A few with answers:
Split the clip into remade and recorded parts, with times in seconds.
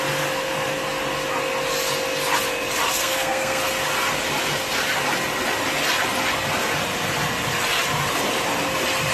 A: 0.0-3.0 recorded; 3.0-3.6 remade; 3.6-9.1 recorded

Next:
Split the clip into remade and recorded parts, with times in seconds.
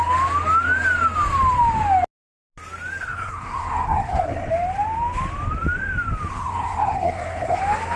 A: 0.0-3.0 recorded; 3.0-4.5 remade; 4.5-6.3 recorded; 6.3-7.6 remade; 7.6-8.0 recorded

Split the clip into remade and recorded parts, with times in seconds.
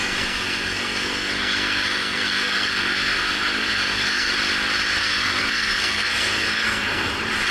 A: 0.0-4.3 remade; 4.3-5.0 recorded; 5.0-7.1 remade; 7.1-7.5 recorded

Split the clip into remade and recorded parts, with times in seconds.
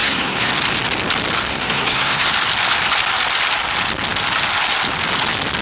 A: 0.0-0.5 remade; 0.5-1.5 recorded; 1.5-2.3 remade; 2.3-5.6 recorded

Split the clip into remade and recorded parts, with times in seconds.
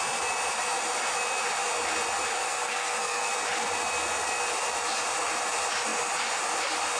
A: 0.0-2.4 recorded; 2.4-3.3 remade; 3.3-7.0 recorded